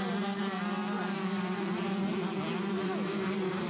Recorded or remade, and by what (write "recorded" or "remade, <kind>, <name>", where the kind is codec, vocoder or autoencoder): recorded